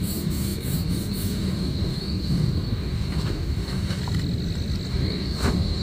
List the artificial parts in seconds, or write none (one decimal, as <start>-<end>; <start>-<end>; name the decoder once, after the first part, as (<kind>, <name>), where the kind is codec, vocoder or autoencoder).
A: 0.0-4.0 (codec, DAC); 4.9-5.8